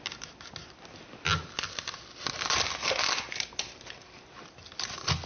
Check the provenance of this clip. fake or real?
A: real